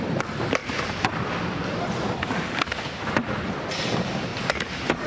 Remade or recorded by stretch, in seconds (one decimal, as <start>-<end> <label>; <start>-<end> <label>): 0.0-5.1 remade